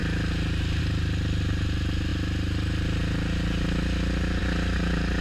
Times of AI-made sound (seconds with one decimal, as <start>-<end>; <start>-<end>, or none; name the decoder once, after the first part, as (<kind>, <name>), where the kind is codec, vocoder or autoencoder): 0.0-0.8 (vocoder, BigVGAN v2)